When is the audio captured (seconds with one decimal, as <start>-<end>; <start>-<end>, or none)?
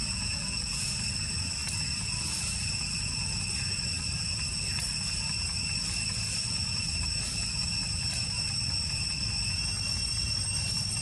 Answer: 0.9-11.0